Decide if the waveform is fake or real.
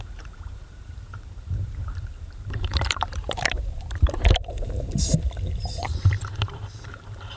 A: fake